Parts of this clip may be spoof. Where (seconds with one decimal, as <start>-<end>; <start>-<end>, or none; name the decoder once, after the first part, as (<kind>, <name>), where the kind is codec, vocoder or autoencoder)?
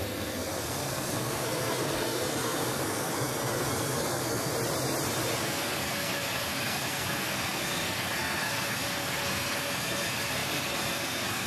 0.0-4.5 (codec, SNAC); 5.4-11.5